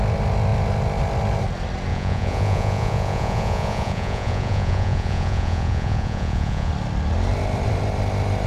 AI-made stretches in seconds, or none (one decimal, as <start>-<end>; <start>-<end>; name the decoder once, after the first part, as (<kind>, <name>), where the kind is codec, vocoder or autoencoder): 1.9-6.7 (vocoder, Vocos)